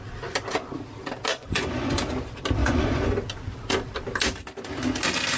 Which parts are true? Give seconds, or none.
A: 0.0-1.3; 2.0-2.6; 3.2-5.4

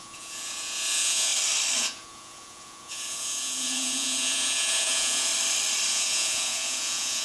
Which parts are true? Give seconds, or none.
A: 1.3-1.8; 5.3-5.9

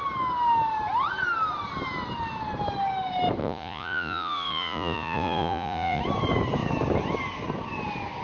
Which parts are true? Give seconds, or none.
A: 0.0-3.4; 6.0-8.2

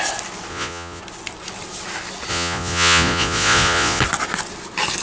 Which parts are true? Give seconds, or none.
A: 0.0-0.5; 1.0-2.3; 4.0-5.0

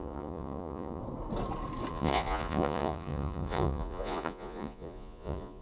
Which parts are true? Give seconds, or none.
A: 1.0-1.9

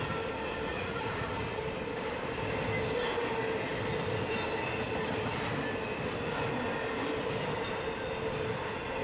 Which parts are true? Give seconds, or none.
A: 0.0-0.7; 1.6-9.0

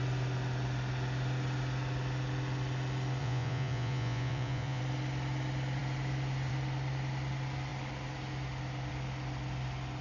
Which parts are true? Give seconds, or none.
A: 0.0-3.2; 4.8-10.0